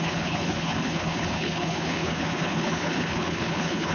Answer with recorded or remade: remade